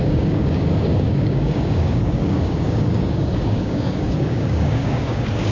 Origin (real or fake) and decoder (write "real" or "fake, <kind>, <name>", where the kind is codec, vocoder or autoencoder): fake, codec, DAC